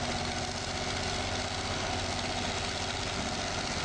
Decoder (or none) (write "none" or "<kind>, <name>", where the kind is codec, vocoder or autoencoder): none